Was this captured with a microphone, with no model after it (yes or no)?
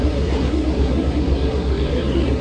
no